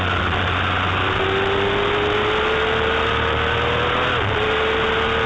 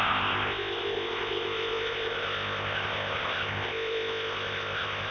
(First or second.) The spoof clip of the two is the second